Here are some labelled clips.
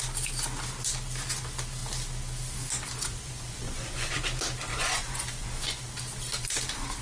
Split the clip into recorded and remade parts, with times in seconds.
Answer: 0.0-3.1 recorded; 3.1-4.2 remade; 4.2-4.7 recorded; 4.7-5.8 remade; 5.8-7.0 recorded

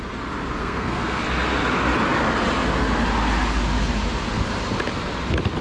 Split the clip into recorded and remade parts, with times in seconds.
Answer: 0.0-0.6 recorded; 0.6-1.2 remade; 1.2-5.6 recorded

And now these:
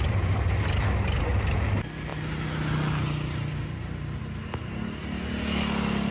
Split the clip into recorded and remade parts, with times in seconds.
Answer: 0.0-6.1 recorded

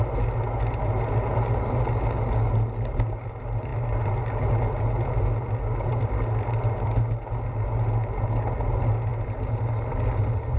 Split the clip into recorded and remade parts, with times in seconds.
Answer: 0.0-10.6 recorded

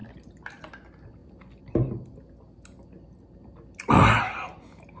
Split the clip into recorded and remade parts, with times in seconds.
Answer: 0.0-5.0 recorded

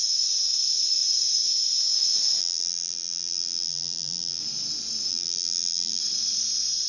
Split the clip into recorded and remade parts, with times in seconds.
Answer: 0.0-2.4 recorded; 2.4-4.4 remade; 4.4-5.1 recorded; 5.1-6.0 remade; 6.0-6.9 recorded